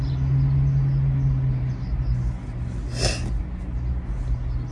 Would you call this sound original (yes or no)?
yes